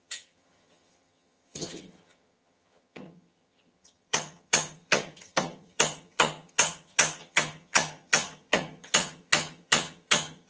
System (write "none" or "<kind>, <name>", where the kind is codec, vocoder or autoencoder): vocoder, HiFi-GAN